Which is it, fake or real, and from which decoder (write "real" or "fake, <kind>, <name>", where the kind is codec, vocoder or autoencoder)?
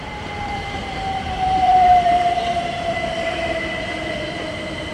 fake, vocoder, BigVGAN v2